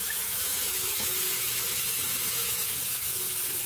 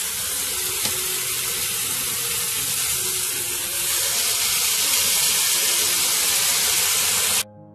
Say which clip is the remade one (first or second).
first